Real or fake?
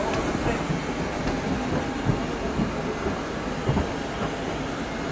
real